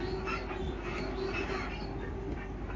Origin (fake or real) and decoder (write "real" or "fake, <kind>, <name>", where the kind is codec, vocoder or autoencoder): real